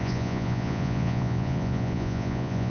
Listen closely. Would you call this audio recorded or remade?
remade